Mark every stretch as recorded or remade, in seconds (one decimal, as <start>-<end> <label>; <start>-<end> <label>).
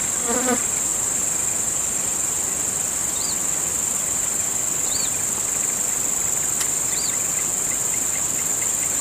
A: 0.0-9.0 recorded